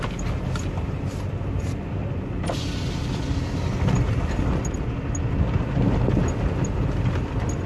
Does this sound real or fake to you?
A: real